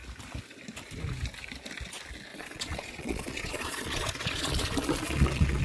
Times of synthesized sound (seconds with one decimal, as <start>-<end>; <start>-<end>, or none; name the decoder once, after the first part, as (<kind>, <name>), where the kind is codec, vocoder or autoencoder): 2.3-5.6 (vocoder, Vocos)